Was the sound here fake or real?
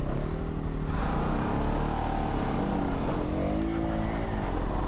real